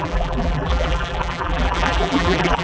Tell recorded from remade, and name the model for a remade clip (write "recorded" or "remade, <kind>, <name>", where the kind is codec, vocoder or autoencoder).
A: remade, vocoder, BigVGAN v2